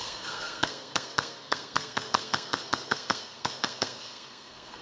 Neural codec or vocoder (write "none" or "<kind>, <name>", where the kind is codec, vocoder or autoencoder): codec, SNAC